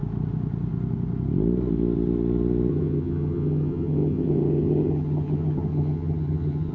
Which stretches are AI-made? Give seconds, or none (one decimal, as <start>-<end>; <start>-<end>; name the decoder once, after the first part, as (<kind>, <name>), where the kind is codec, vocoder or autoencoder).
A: 2.7-6.7 (vocoder, HiFi-GAN)